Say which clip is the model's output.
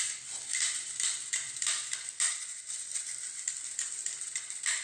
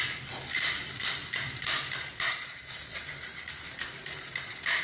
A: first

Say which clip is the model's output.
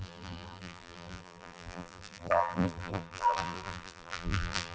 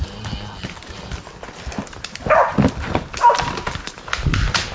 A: first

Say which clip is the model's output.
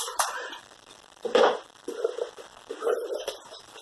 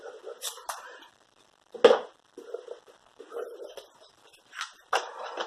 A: first